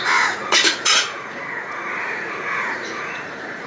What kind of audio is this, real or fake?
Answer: fake